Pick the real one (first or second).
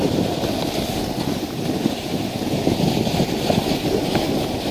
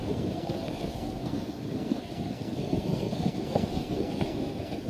first